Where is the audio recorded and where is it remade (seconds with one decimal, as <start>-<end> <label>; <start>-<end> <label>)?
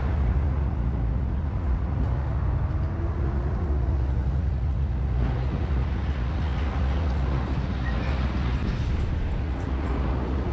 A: 0.0-2.4 remade; 2.4-3.1 recorded; 3.1-8.6 remade; 8.6-9.4 recorded; 9.4-10.5 remade